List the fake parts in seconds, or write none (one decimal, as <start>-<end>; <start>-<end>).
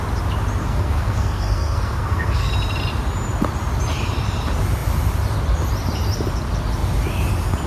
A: 0.6-2.5